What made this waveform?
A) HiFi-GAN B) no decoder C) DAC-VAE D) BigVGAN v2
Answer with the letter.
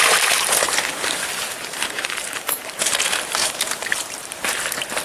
D